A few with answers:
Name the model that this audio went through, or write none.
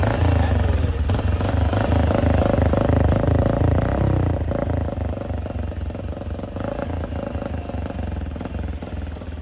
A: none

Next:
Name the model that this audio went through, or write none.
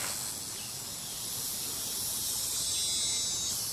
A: none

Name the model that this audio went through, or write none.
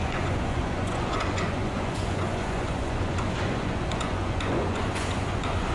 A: vocoder, Vocos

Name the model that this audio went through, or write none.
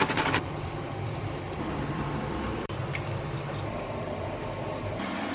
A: vocoder, BigVGAN v2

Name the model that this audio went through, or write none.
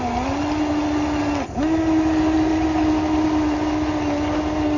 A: none